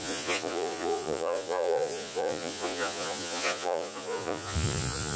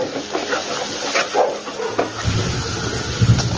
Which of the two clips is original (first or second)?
second